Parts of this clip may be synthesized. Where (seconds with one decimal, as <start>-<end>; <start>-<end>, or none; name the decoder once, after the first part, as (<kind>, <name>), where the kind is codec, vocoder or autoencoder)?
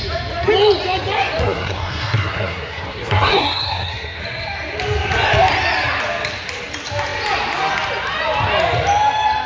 1.4-4.2 (codec, SNAC)